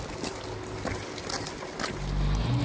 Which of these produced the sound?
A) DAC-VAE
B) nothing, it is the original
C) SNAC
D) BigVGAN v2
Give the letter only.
B